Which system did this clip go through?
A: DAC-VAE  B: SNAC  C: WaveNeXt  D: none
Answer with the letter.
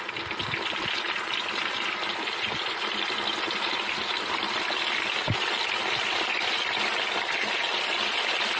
D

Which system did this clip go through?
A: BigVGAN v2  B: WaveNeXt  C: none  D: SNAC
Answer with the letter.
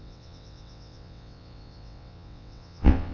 B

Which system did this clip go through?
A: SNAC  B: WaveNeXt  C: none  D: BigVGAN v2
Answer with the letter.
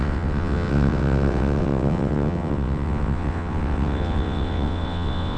B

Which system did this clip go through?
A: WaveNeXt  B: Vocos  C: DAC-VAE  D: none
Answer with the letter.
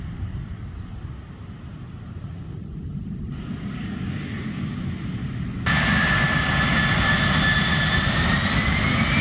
D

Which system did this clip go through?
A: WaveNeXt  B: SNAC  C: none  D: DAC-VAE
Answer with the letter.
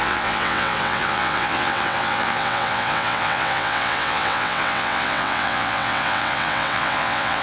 A